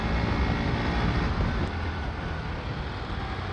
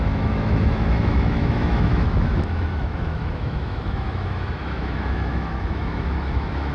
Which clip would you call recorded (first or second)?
first